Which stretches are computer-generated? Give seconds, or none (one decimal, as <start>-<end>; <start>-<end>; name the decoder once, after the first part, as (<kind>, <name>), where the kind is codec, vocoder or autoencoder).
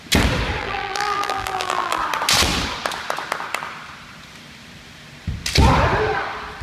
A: 0.6-2.0 (vocoder, BigVGAN v2)